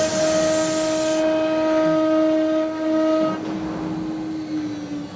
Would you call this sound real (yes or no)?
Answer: yes